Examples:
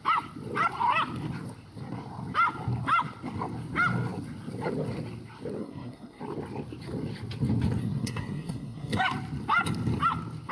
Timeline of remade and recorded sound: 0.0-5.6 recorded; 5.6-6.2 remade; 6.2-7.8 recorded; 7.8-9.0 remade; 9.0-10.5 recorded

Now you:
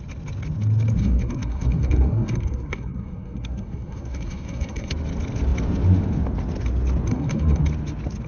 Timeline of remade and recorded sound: 0.0-1.0 recorded; 1.0-4.9 remade; 4.9-7.1 recorded; 7.1-7.6 remade; 7.6-8.3 recorded

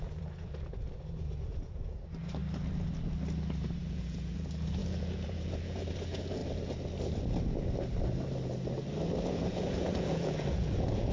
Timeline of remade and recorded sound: 0.0-2.4 remade; 2.4-3.8 recorded; 3.8-6.4 remade; 6.4-9.5 recorded; 9.5-11.1 remade

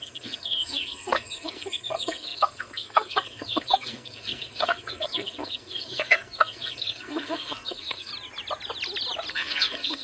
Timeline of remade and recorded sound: 0.0-8.1 remade; 8.1-9.3 recorded; 9.3-10.0 remade

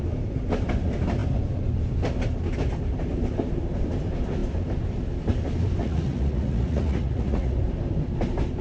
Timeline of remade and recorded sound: 0.0-5.8 recorded; 5.8-7.6 remade; 7.6-8.6 recorded